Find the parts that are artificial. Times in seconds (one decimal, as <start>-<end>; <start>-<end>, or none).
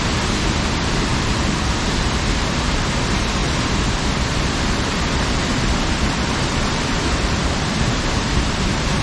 0.0-3.4; 4.3-5.4; 6.7-9.0